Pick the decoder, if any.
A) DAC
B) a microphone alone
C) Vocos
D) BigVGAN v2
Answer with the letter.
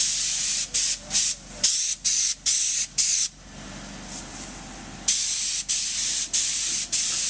B